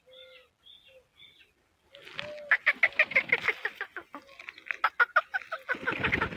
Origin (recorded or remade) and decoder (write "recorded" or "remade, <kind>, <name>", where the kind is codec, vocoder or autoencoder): recorded